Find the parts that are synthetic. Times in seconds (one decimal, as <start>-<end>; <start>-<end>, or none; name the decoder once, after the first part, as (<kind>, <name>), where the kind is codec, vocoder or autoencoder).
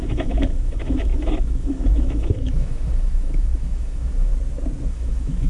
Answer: 0.0-4.3 (autoencoder, DAC-VAE); 4.9-5.5